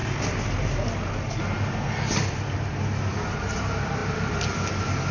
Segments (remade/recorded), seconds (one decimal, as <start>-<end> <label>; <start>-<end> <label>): 0.0-5.1 recorded